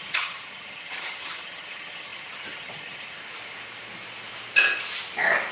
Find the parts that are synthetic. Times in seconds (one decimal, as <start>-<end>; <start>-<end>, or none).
0.0-3.2